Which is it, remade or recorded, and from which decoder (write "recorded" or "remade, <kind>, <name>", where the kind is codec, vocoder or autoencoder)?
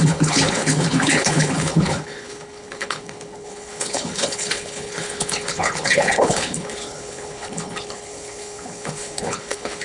remade, codec, HILCodec